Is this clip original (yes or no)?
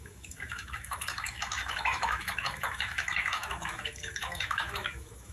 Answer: no